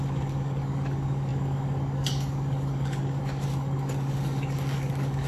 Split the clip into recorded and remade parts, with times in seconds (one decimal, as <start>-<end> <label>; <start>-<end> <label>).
0.0-5.3 remade